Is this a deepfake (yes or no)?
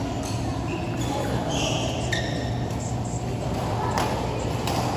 no